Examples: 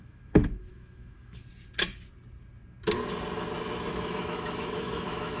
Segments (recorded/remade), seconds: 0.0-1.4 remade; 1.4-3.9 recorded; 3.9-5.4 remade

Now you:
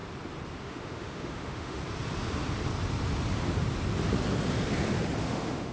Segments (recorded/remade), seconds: 0.0-0.6 recorded; 0.6-1.8 remade; 1.8-5.2 recorded; 5.2-5.7 remade

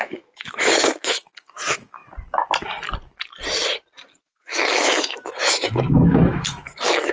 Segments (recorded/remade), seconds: 0.0-2.0 remade; 2.0-4.2 recorded; 4.2-7.1 remade

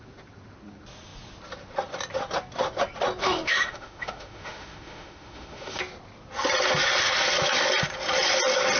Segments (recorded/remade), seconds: 0.0-3.2 recorded; 3.2-5.8 remade; 5.8-8.8 recorded

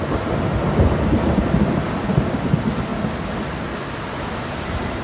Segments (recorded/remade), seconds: 0.0-5.0 recorded